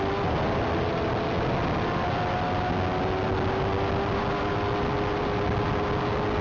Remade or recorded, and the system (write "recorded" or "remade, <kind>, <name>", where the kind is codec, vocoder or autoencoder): recorded